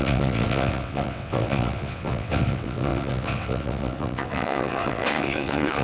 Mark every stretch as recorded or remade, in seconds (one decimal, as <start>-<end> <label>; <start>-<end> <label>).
0.0-5.8 remade